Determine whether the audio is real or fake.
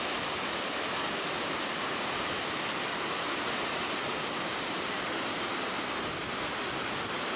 real